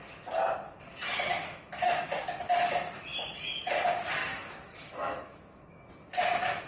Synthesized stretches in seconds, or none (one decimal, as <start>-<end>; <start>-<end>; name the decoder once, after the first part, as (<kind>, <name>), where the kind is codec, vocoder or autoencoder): 1.3-2.1 (autoencoder, DAC-VAE); 4.2-5.9